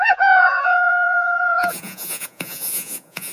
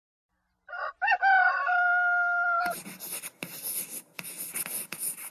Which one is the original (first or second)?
second